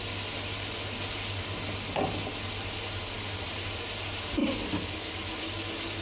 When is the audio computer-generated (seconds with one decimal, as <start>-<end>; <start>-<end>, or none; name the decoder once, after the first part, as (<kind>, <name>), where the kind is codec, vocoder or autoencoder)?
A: none